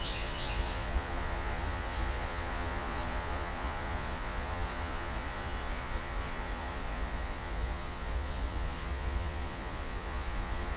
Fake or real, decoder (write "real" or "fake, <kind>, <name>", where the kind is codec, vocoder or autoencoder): fake, vocoder, Vocos